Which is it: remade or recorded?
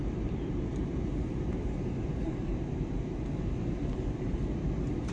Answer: recorded